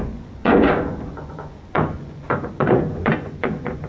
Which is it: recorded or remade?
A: remade